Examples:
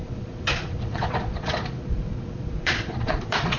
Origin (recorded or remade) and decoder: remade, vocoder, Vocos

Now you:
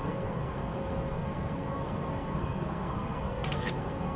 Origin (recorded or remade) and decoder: remade, codec, SNAC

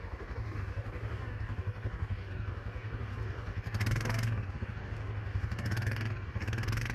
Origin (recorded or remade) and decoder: remade, codec, DAC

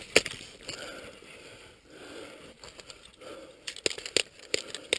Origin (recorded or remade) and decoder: recorded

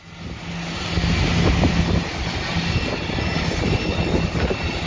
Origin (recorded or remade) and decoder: recorded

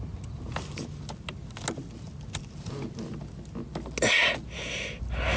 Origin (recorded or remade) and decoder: recorded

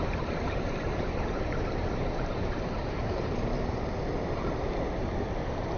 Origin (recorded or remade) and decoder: remade, vocoder, BigVGAN v2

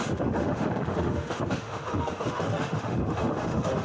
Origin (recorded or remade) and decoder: remade, autoencoder, DAC-VAE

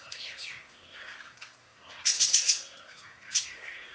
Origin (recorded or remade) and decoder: remade, codec, SNAC